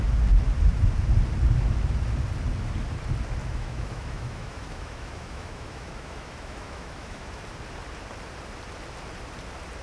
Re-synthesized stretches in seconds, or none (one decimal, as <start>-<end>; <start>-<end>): 3.4-7.4